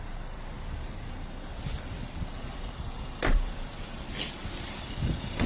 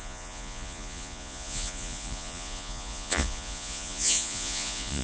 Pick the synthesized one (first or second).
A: second